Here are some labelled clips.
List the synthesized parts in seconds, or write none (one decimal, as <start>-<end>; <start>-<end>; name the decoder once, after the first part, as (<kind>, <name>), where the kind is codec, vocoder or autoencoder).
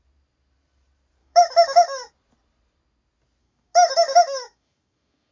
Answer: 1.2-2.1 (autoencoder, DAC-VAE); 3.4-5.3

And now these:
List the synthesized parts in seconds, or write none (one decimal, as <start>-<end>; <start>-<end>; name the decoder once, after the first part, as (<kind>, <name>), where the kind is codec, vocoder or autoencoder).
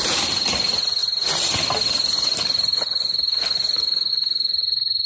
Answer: none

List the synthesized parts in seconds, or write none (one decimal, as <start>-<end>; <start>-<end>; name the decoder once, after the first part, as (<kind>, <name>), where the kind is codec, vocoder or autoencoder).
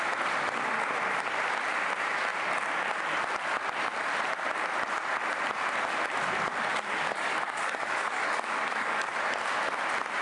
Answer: 6.7-9.1 (codec, DAC)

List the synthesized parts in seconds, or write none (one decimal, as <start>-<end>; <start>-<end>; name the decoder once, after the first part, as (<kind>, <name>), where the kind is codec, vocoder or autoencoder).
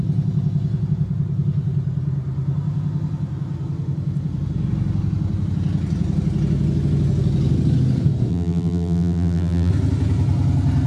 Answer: 8.3-9.7 (vocoder, BigVGAN v2)